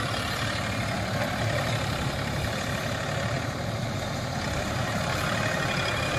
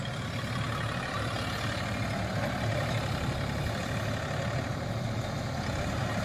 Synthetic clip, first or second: first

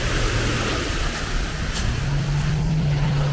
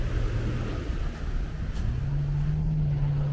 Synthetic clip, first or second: first